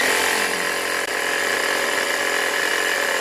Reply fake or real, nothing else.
real